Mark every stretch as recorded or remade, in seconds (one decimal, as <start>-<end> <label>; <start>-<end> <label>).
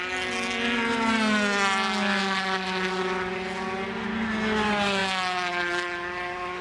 0.0-6.6 recorded